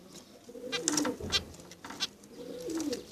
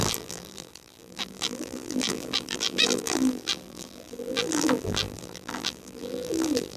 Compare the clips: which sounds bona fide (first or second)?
first